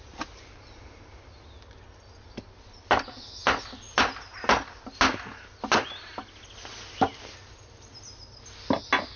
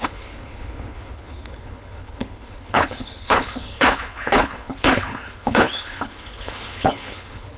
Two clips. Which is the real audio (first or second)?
first